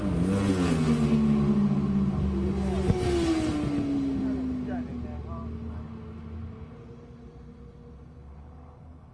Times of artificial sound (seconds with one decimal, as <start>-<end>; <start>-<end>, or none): none